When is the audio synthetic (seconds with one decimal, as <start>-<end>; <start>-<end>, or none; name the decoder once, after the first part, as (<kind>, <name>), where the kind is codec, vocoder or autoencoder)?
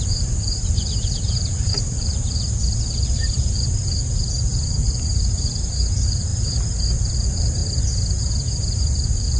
0.0-6.3 (vocoder, BigVGAN v2); 7.0-7.6; 8.2-9.4